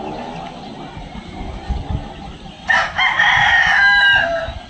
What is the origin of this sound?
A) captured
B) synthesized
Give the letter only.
A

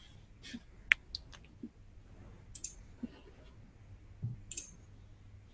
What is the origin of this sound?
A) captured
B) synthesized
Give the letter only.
A